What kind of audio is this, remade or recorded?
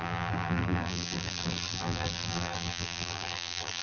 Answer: remade